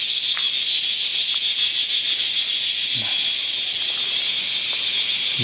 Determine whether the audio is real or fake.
real